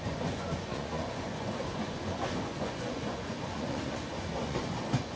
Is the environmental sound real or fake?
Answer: fake